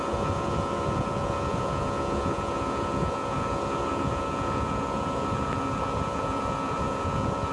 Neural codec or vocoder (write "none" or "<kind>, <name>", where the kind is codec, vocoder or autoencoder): vocoder, Vocos